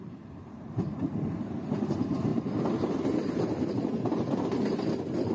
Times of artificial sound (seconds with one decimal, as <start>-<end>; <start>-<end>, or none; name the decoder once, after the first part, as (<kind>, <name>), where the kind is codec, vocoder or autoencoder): 0.0-2.3 (vocoder, BigVGAN v2)